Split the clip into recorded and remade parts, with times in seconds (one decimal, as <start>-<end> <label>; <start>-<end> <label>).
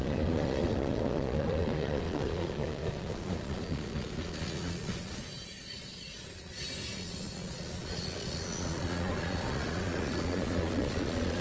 0.0-6.5 remade; 6.5-7.0 recorded; 7.0-11.4 remade